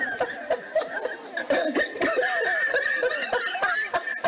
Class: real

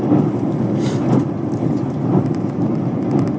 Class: fake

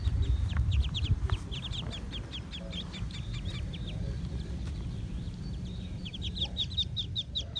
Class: fake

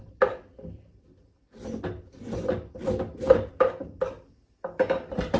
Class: real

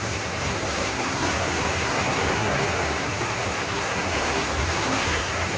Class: fake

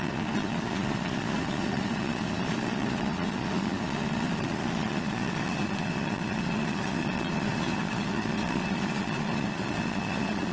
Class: fake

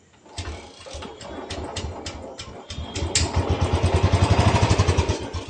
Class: real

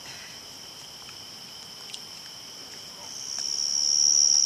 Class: real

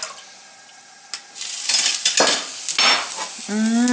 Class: real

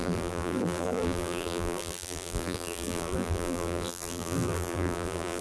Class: fake